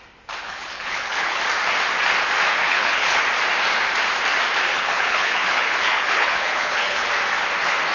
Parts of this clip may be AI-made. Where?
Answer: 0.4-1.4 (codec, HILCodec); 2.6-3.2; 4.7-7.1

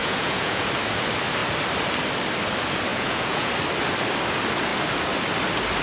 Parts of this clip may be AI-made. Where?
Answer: 0.0-0.7 (vocoder, Vocos); 2.9-3.5

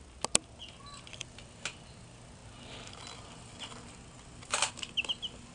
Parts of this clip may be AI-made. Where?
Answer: none

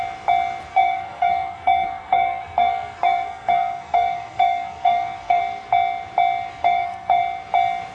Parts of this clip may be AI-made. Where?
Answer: 0.7-5.4 (codec, SNAC); 6.5-7.2